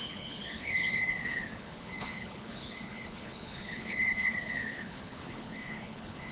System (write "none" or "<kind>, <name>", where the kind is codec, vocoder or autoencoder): codec, HILCodec